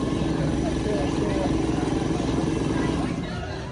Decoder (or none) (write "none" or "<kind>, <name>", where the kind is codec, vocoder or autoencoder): none